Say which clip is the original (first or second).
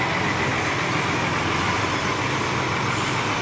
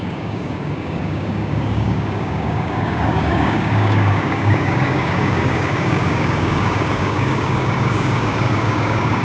first